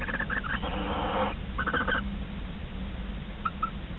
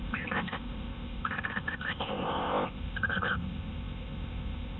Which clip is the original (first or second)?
first